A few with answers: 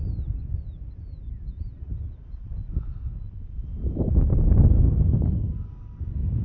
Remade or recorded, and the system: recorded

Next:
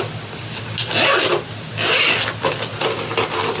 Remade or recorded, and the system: recorded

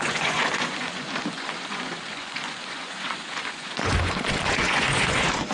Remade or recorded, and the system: remade, vocoder, Vocos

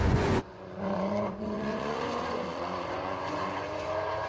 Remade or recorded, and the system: remade, vocoder, Vocos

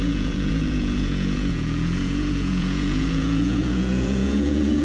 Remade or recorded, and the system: remade, vocoder, Vocos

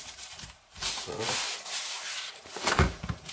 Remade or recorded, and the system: remade, vocoder, Vocos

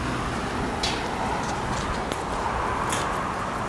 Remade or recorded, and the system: recorded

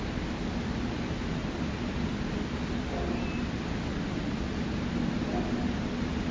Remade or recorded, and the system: recorded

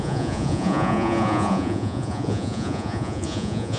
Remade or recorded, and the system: remade, vocoder, Vocos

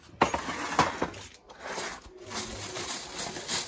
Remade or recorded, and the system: recorded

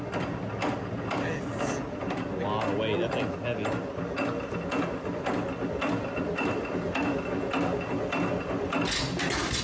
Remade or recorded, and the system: recorded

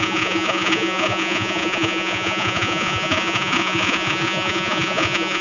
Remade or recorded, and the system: remade, vocoder, Vocos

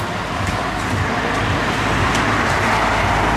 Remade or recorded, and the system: recorded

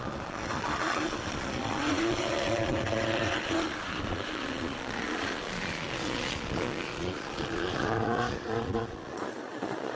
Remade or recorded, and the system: remade, vocoder, Vocos